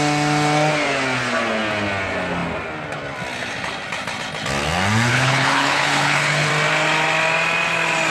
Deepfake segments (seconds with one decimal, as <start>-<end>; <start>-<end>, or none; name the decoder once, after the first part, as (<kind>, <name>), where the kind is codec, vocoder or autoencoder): 5.1-6.5 (codec, HILCodec)